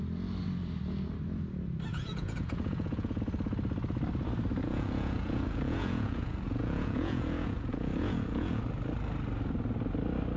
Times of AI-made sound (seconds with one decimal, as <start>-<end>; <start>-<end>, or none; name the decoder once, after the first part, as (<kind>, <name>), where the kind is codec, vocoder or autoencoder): 1.9-3.2 (vocoder, Vocos); 4.6-8.6